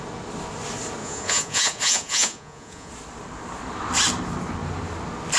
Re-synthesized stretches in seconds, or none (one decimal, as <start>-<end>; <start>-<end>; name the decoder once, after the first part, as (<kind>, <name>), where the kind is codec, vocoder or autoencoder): 1.0-2.9 (vocoder, Vocos)